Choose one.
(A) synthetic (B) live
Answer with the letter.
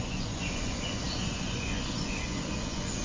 A